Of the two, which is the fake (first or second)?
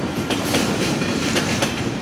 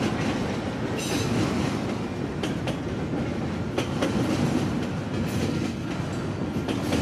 first